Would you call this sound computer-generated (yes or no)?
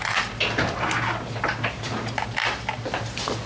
no